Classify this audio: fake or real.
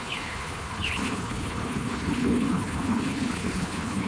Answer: fake